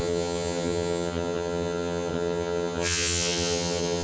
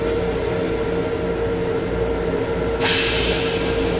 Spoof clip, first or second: first